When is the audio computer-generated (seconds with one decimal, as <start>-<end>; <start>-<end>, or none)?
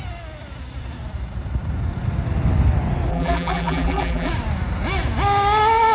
3.1-4.3